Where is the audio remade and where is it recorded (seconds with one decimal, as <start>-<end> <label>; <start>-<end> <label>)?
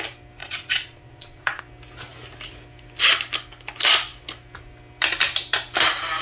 0.0-0.4 recorded; 0.4-1.6 remade; 1.6-6.2 recorded